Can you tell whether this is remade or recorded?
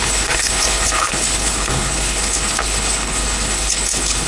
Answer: remade